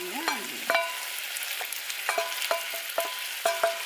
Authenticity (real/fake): real